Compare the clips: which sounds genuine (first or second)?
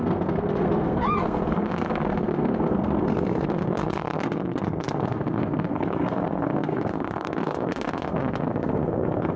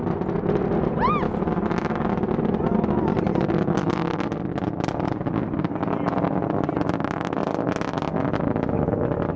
second